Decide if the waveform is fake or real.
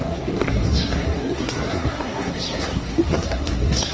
fake